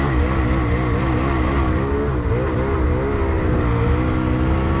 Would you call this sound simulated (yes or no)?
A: no